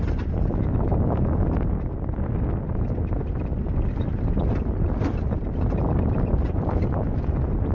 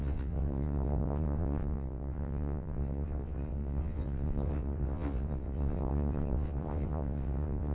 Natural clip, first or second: first